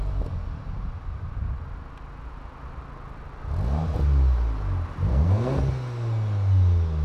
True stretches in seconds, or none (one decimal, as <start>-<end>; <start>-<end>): 0.0-5.1; 5.6-7.0